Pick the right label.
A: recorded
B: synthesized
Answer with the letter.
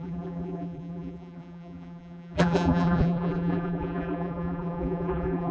B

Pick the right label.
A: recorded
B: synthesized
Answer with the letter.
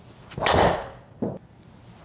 B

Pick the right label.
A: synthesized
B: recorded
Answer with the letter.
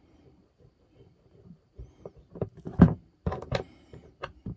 A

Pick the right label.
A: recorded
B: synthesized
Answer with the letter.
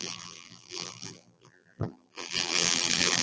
B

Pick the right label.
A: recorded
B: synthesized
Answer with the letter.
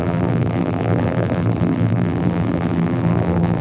B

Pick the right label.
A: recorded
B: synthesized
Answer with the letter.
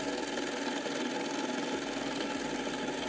A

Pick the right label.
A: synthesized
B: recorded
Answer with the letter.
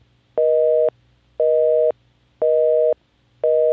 B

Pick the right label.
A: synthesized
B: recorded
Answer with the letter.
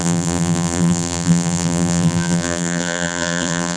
A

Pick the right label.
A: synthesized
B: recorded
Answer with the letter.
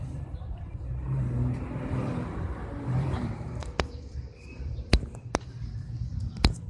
A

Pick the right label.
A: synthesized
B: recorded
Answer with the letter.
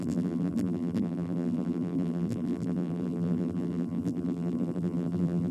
A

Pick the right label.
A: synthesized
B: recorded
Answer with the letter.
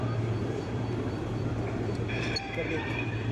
A